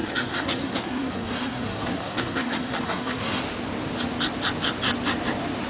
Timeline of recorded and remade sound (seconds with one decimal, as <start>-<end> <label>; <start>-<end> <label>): 0.0-3.4 remade; 3.4-5.7 recorded